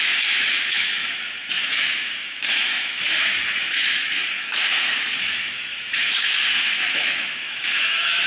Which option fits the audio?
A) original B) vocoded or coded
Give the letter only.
B